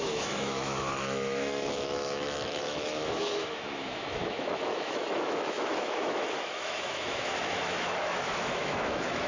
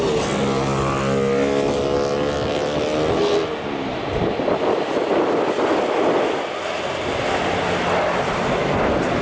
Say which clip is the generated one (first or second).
first